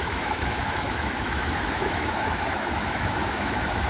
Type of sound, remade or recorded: remade